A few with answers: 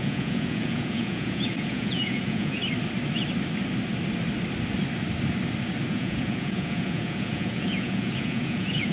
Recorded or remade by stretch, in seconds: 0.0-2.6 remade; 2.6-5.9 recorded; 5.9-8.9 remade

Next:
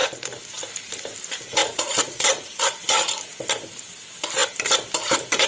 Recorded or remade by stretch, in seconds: 0.0-1.6 recorded; 1.6-2.6 remade; 2.6-5.5 recorded

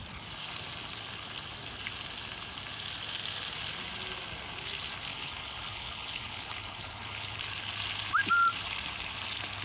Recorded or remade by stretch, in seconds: 0.0-5.1 recorded; 5.1-7.4 remade; 7.4-9.6 recorded

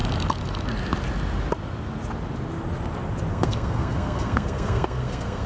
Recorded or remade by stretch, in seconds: 0.0-3.3 recorded; 3.3-5.5 remade

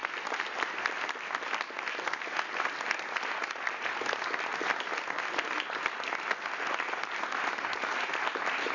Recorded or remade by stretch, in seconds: 0.0-8.7 recorded

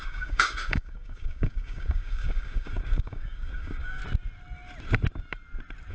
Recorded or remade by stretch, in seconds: 0.0-4.0 remade; 4.0-5.9 recorded

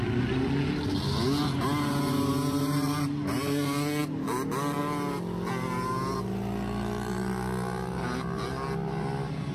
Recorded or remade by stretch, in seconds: 0.0-9.5 recorded

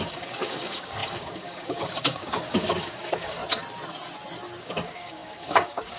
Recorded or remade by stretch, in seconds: 0.0-3.4 remade; 3.4-4.6 recorded; 4.6-6.0 remade